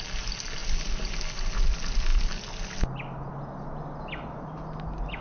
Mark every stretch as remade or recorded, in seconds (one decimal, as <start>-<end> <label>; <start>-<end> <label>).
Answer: 0.0-5.2 recorded